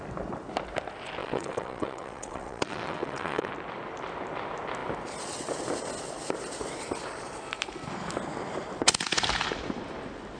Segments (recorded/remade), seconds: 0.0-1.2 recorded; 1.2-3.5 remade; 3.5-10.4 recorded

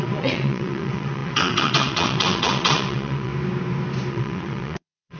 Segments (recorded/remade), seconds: 0.0-3.3 remade; 3.3-4.1 recorded; 4.1-5.2 remade